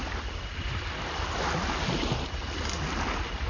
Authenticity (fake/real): real